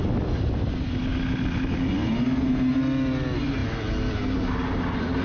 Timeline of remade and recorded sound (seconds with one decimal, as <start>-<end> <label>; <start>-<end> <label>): 0.0-5.2 recorded